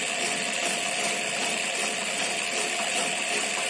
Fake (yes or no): no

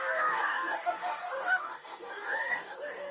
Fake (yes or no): yes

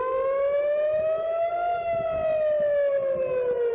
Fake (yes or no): no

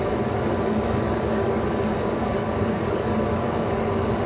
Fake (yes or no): yes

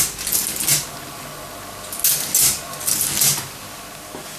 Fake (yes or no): no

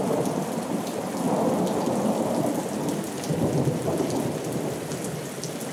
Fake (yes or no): no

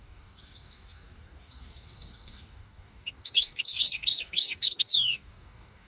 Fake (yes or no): yes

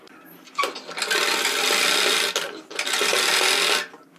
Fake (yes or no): no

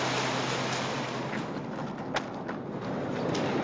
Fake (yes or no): no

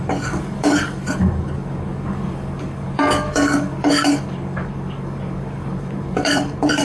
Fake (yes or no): yes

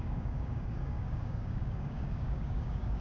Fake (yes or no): yes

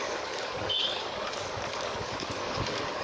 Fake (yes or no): yes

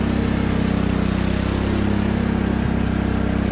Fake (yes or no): no